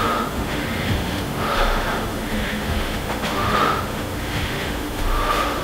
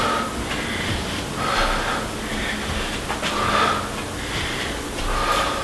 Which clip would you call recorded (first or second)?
second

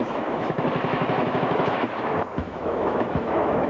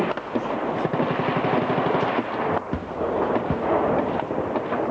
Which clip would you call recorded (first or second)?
second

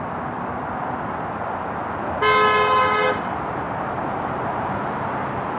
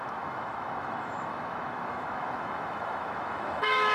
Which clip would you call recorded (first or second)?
first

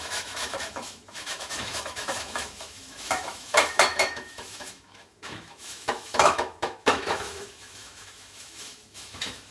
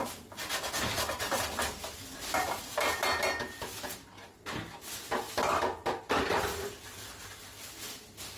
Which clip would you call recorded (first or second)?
second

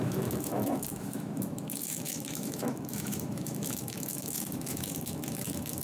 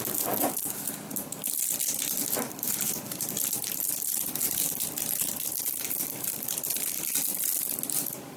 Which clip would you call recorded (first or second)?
second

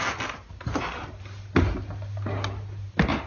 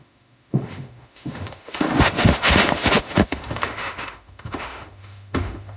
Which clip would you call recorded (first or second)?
first